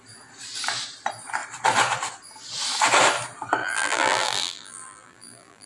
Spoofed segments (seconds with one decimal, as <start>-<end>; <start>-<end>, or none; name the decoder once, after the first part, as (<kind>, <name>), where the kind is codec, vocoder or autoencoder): 3.6-5.7 (vocoder, BigVGAN v2)